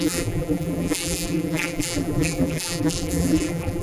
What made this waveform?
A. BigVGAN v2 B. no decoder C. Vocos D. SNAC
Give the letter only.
A